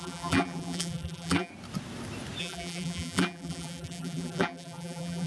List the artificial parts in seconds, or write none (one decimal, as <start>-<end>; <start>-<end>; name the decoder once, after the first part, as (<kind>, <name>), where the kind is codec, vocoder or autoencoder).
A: 0.0-1.5 (vocoder, BigVGAN v2); 2.4-5.3